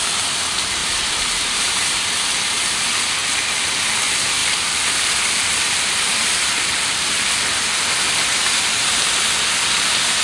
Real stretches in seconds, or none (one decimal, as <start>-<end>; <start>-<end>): 0.0-0.8; 2.1-4.4; 7.1-10.2